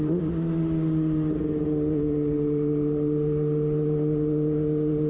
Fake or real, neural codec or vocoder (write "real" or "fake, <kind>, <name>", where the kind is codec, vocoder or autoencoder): real